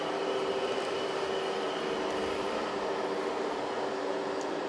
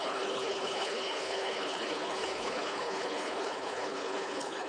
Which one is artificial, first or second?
second